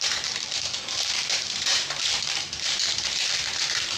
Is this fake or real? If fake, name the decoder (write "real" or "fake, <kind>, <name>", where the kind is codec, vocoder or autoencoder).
fake, vocoder, BigVGAN v2